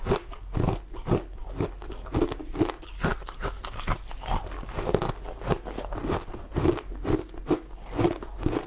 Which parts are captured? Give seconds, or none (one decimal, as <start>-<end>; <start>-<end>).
0.0-8.7